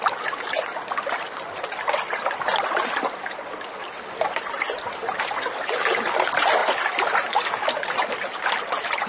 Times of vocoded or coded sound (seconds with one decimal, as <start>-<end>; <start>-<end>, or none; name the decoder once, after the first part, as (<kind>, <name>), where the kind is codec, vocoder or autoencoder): none